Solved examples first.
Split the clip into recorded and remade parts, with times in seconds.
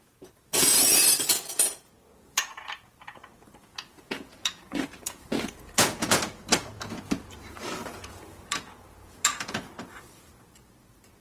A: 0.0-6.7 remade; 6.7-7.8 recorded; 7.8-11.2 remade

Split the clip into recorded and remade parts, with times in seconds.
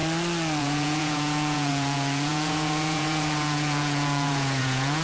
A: 0.0-0.6 recorded; 0.6-5.0 remade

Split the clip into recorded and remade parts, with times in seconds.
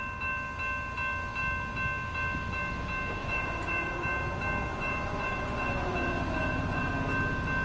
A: 0.0-3.2 recorded; 3.2-4.0 remade; 4.0-4.7 recorded; 4.7-6.9 remade; 6.9-7.6 recorded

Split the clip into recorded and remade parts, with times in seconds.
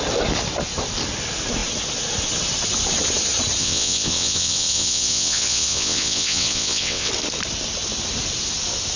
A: 0.0-3.6 recorded; 3.6-7.1 remade; 7.1-9.0 recorded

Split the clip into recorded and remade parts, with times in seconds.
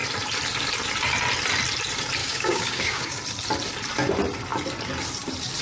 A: 0.0-2.2 recorded; 2.2-3.2 remade; 3.2-5.6 recorded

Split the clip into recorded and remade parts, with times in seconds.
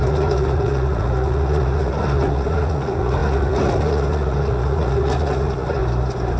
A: 0.0-5.8 remade; 5.8-6.4 recorded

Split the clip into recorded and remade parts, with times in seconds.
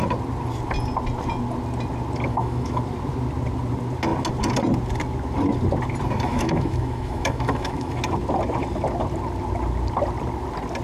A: 0.0-2.3 recorded; 2.3-2.8 remade; 2.8-6.3 recorded; 6.3-8.0 remade; 8.0-10.8 recorded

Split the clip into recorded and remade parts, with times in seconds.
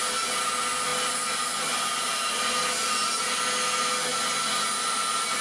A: 0.0-5.4 recorded